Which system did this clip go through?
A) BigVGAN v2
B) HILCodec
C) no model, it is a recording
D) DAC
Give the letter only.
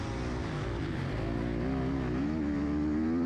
C